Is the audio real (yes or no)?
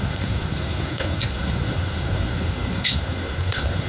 no